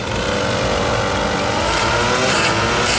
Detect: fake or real real